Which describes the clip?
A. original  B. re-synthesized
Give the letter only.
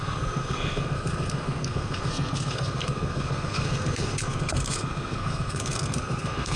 B